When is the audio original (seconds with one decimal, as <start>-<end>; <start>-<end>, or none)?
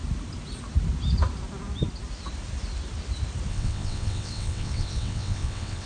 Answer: 0.0-3.5